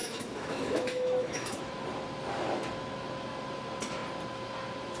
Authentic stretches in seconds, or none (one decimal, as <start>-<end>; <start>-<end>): 1.7-5.0